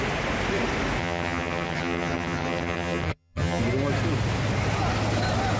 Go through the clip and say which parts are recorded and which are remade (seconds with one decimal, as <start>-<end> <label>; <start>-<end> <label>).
0.0-1.0 recorded; 1.0-3.6 remade; 3.6-5.6 recorded